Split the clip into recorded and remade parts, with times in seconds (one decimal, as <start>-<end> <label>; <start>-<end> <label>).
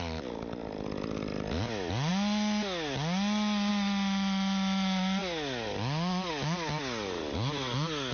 0.0-8.1 recorded